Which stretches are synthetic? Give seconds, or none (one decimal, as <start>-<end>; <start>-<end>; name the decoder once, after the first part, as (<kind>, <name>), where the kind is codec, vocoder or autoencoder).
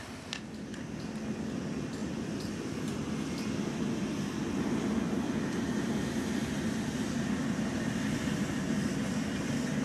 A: none